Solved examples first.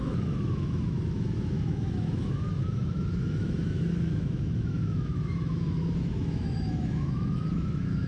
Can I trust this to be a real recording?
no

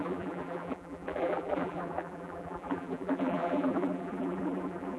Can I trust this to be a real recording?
no